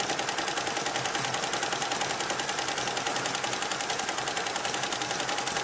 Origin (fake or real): real